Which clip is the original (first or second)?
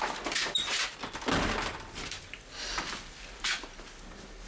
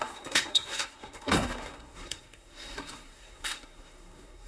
first